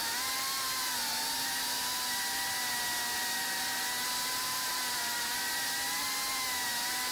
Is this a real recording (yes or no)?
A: yes